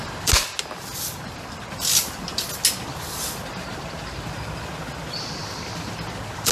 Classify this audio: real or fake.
real